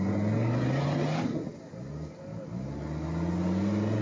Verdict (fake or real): real